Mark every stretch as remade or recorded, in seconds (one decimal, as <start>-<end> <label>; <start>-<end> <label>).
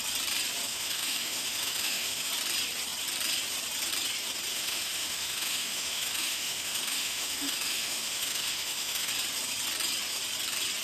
0.0-0.7 recorded; 0.7-2.3 remade; 2.3-4.5 recorded; 4.5-9.1 remade; 9.1-10.8 recorded